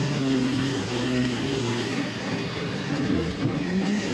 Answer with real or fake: fake